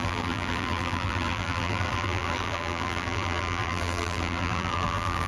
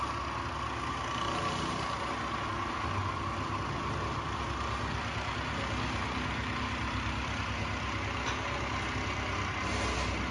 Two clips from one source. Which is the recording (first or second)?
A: second